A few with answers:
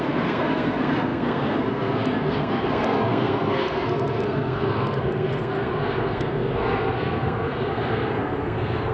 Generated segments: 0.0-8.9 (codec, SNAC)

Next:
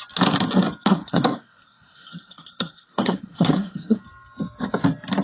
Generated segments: 0.9-4.0 (codec, SNAC)

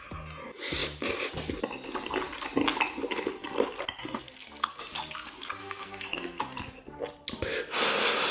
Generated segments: 4.0-4.8 (codec, SNAC); 5.6-6.4